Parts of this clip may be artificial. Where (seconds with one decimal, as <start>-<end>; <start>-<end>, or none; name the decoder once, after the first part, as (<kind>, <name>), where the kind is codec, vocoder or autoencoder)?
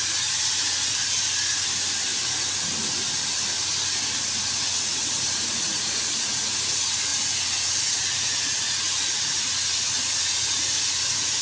0.0-1.0 (vocoder, Vocos); 4.4-7.1; 7.8-11.4